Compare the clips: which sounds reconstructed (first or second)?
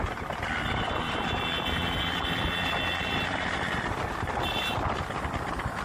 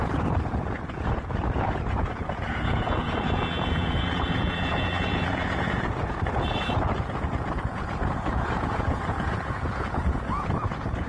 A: second